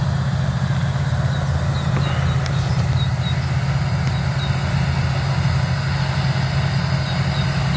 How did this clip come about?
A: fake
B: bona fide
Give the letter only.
B